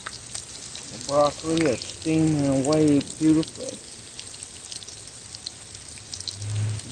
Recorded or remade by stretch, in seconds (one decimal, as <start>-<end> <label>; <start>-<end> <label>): 0.0-6.9 recorded